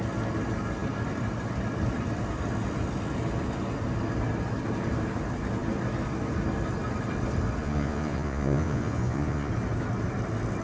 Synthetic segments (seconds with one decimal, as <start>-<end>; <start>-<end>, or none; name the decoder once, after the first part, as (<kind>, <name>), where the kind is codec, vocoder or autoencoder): 7.6-9.5 (vocoder, Vocos)